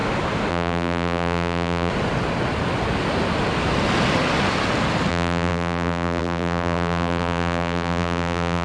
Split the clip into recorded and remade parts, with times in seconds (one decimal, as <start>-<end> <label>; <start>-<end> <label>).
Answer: 0.0-0.5 recorded; 0.5-1.9 remade; 1.9-5.1 recorded; 5.1-8.6 remade